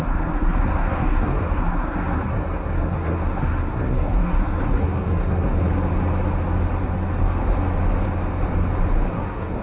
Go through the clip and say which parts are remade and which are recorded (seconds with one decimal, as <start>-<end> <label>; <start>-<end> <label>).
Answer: 0.0-5.7 remade; 5.7-9.1 recorded; 9.1-9.6 remade